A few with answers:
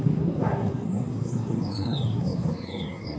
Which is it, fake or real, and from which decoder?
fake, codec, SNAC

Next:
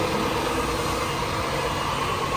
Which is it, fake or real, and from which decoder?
real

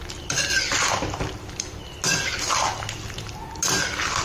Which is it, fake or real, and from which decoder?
real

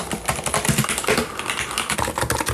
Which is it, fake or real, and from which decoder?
real